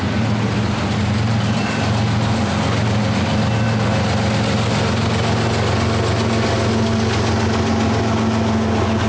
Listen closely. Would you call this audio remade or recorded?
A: recorded